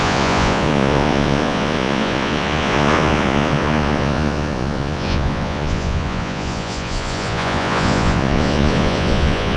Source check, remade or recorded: remade